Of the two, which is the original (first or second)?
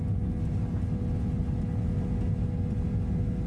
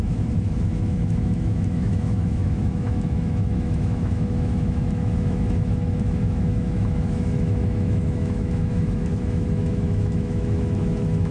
first